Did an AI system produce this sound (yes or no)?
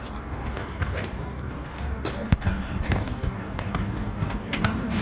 yes